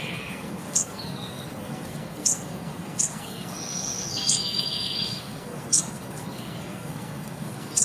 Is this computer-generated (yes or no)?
yes